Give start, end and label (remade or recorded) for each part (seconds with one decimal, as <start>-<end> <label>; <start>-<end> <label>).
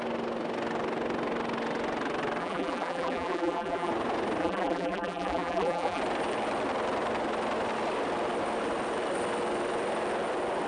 0.0-2.4 recorded; 2.4-3.9 remade; 3.9-4.4 recorded; 4.4-6.0 remade; 6.0-10.7 recorded